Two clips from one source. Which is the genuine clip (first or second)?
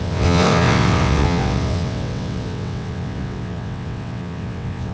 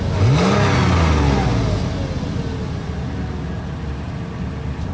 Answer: second